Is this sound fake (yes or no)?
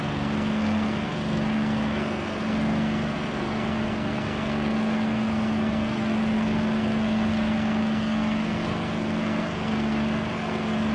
yes